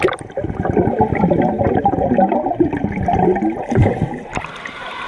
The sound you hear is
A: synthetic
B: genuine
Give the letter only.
A